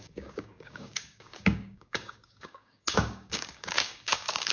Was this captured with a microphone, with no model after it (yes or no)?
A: no